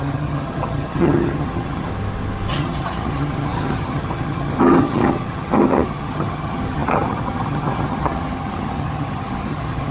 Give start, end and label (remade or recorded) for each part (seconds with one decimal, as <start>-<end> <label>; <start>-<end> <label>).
0.0-1.9 remade; 1.9-2.5 recorded; 2.5-9.9 remade